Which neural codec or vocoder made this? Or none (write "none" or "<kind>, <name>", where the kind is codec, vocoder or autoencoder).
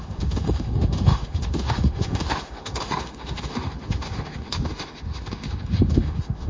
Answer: autoencoder, DAC-VAE